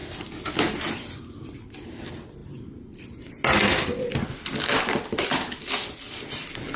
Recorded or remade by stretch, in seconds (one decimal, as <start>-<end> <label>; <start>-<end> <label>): 0.0-6.8 recorded